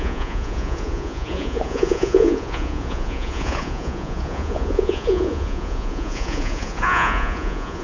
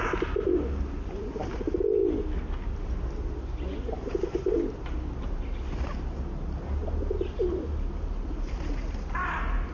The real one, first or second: second